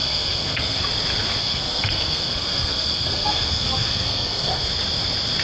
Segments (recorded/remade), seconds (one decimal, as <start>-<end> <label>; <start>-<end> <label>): 0.0-0.8 remade; 0.8-1.4 recorded; 1.4-4.6 remade; 4.6-5.4 recorded